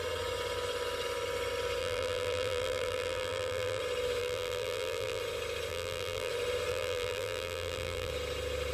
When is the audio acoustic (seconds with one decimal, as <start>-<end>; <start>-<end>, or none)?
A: 0.0-1.8; 3.8-4.2; 5.2-5.7; 6.3-6.7; 8.1-8.7